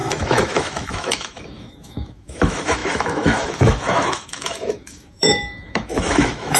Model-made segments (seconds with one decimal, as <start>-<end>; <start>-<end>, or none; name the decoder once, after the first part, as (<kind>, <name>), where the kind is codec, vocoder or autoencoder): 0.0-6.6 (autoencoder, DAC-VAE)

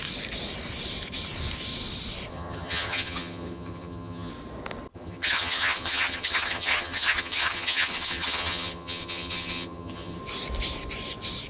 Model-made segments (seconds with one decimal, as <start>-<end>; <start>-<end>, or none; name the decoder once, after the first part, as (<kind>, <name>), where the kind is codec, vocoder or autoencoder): 2.3-4.3 (vocoder, HiFi-GAN); 4.9-10.2

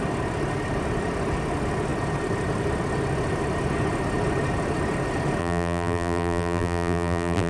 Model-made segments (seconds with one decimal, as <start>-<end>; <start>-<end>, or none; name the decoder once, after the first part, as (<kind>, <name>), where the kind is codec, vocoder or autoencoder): 5.4-7.5 (vocoder, BigVGAN v2)